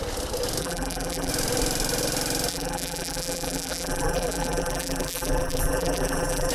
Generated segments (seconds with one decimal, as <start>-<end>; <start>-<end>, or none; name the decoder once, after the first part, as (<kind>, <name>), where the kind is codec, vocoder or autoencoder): 0.6-1.3 (vocoder, BigVGAN v2); 2.5-6.5